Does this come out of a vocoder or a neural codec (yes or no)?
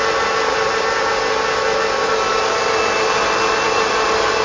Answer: no